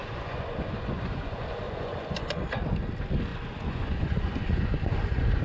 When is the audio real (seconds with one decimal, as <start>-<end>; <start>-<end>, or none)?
2.4-3.3